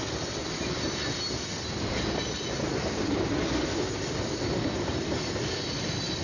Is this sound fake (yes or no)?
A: no